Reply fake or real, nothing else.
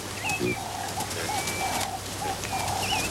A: real